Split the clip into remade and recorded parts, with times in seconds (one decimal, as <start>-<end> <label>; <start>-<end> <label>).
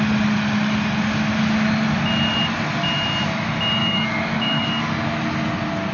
0.0-3.8 recorded; 3.8-4.8 remade; 4.8-5.9 recorded